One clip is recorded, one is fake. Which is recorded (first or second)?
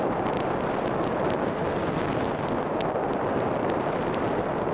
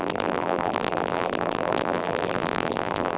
first